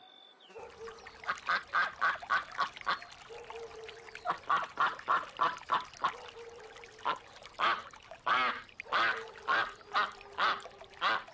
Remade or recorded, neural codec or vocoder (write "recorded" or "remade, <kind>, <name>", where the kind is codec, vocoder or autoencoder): recorded